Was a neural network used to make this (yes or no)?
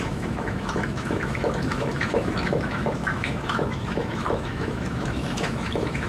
yes